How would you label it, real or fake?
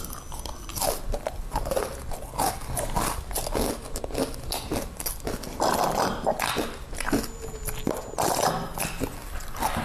real